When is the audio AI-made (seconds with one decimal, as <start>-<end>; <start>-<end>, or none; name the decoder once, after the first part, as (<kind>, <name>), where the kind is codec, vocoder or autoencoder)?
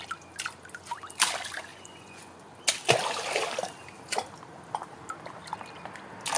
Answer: 1.7-2.4 (vocoder, Vocos)